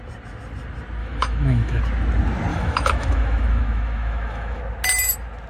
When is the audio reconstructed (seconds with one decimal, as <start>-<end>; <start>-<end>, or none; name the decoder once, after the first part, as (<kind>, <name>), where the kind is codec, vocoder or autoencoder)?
1.0-1.8 (autoencoder, DAC-VAE); 2.5-4.6